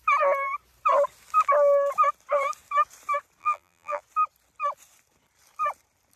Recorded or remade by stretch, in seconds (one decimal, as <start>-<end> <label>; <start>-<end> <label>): 0.0-3.4 recorded; 3.4-4.0 remade; 4.0-6.2 recorded